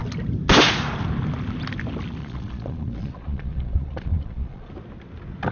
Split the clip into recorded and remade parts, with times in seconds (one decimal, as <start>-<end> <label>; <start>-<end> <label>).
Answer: 0.0-2.2 recorded; 2.2-4.7 remade; 4.7-5.5 recorded

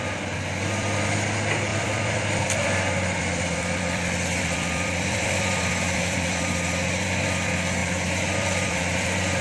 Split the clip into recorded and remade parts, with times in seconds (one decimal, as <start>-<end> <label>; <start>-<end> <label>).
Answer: 0.0-1.7 recorded; 1.7-6.6 remade; 6.6-7.8 recorded; 7.8-9.4 remade

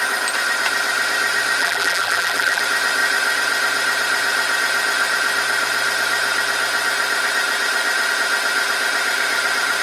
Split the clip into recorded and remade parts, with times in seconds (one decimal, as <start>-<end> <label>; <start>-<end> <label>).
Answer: 0.0-1.6 recorded; 1.6-2.6 remade; 2.6-9.8 recorded

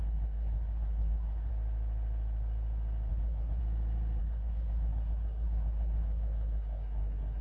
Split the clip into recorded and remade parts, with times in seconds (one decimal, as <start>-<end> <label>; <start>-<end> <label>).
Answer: 0.0-1.5 remade; 1.5-3.1 recorded; 3.1-3.6 remade; 3.6-4.2 recorded; 4.2-7.4 remade